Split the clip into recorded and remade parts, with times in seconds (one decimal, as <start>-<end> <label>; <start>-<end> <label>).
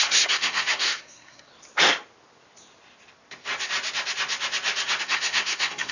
0.0-1.5 remade; 1.5-5.0 recorded; 5.0-5.9 remade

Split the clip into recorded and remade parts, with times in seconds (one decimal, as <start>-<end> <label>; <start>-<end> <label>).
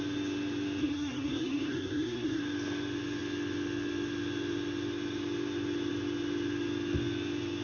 0.0-0.8 recorded; 0.8-2.4 remade; 2.4-7.6 recorded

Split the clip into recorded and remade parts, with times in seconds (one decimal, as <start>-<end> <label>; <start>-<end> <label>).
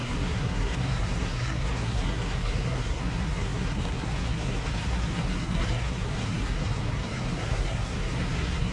0.0-8.7 remade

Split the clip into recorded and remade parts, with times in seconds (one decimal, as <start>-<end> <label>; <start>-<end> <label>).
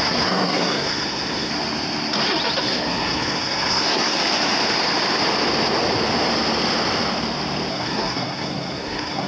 0.0-1.5 remade; 1.5-2.6 recorded; 2.6-4.2 remade; 4.2-7.7 recorded; 7.7-9.3 remade